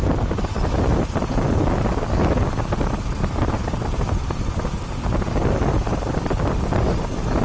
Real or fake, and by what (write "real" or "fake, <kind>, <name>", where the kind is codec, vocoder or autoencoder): real